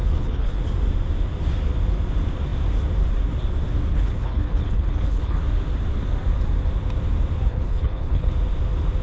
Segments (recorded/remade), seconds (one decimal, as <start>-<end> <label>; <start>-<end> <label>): 0.0-0.6 remade; 0.6-3.9 recorded; 3.9-5.4 remade; 5.4-7.5 recorded; 7.5-8.3 remade; 8.3-9.0 recorded

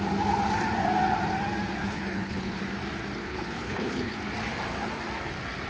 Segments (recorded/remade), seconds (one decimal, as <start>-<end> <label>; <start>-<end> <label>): 0.0-1.8 recorded; 1.8-2.6 remade; 2.6-3.2 recorded; 3.2-4.2 remade; 4.2-5.7 recorded

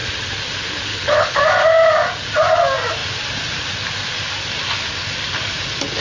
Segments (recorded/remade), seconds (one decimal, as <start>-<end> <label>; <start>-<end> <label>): 0.0-0.9 recorded; 0.9-1.4 remade; 1.4-6.0 recorded

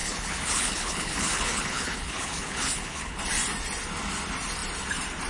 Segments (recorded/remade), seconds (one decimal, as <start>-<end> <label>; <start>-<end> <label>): 0.0-3.2 remade; 3.2-5.3 recorded

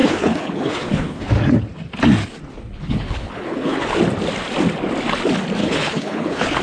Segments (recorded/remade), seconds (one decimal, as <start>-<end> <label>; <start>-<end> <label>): 0.0-1.3 remade; 1.3-2.5 recorded; 2.5-3.9 remade; 3.9-5.6 recorded; 5.6-6.6 remade

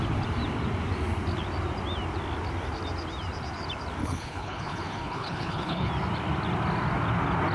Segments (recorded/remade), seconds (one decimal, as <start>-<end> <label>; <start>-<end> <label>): 0.0-4.0 recorded; 4.0-5.9 remade; 5.9-7.5 recorded